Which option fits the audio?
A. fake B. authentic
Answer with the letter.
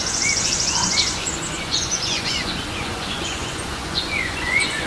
A